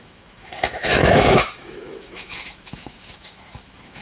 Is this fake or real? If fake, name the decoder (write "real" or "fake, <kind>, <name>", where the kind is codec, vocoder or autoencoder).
fake, autoencoder, DAC-VAE